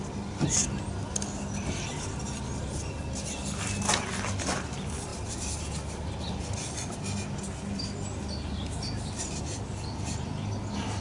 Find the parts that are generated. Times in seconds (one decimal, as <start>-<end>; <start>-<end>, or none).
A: none